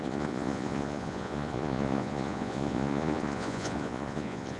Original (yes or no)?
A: no